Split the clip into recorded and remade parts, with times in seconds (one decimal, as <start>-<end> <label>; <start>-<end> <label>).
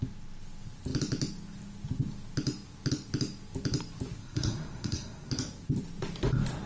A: 0.0-4.2 recorded; 4.2-5.3 remade; 5.3-6.7 recorded